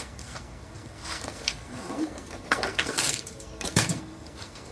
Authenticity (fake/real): fake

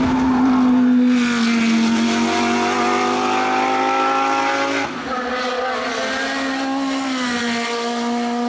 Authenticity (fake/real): real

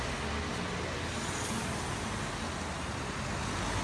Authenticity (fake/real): real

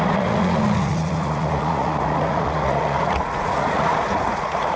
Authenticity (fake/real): fake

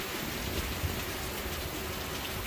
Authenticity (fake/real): real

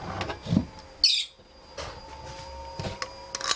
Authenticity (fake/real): real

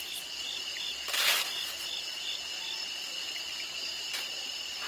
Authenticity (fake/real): real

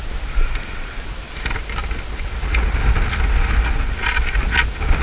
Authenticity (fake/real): real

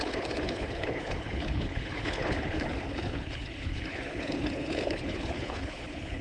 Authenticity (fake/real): fake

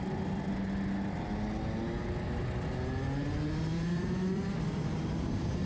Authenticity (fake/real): real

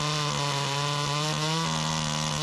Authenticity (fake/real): real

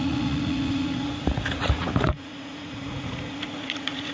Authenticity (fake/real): fake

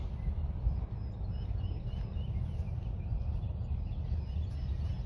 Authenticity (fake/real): real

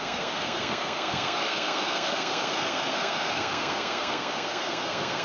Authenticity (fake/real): fake